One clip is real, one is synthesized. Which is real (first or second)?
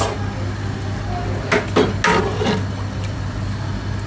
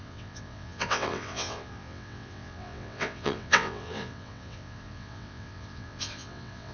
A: first